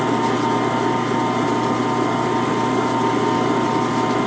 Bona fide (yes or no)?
yes